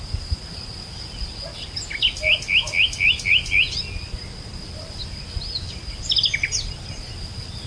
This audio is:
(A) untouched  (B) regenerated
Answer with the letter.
A